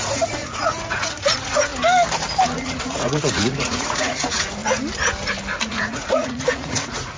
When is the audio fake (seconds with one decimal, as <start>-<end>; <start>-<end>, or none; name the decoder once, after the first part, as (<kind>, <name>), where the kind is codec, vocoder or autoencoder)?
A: 0.0-1.7 (vocoder, Vocos); 2.6-4.6; 5.7-7.2